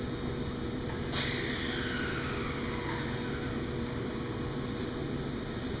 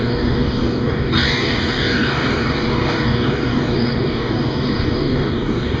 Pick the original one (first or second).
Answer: first